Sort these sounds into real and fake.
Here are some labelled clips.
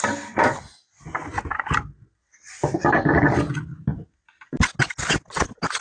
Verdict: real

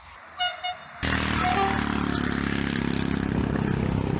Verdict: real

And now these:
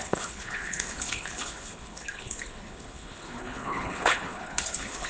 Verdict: fake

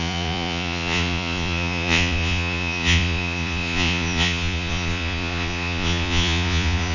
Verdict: fake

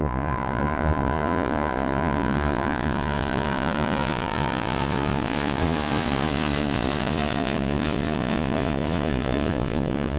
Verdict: fake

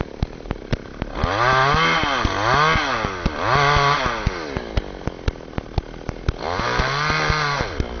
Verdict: real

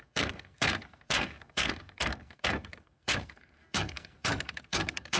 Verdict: fake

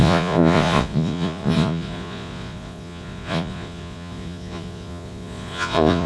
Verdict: fake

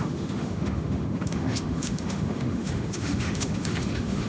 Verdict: fake